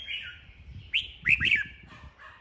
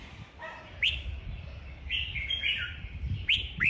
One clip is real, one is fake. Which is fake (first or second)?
second